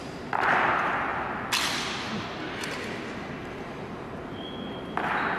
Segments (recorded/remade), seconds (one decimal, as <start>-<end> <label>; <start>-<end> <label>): 0.0-5.4 recorded